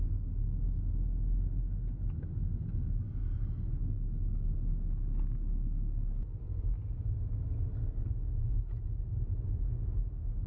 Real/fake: real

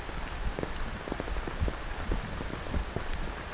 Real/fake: real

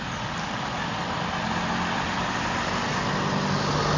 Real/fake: real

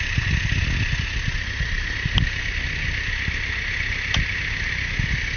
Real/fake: real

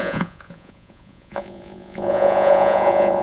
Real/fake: fake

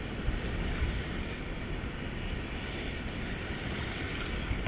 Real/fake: real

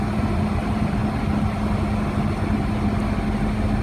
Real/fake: real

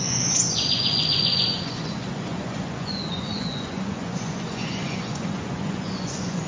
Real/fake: fake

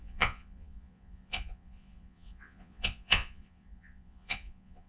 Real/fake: fake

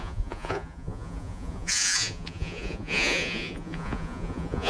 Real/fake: fake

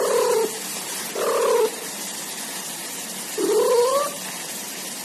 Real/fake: real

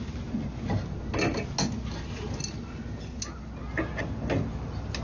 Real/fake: real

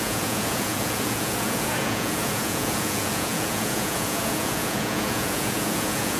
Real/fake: fake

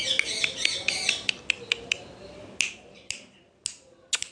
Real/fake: real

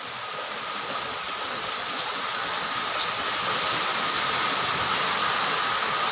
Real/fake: real